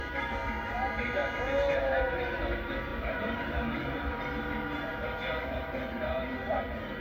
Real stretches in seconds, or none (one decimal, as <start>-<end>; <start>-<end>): 0.0-2.9; 4.2-7.0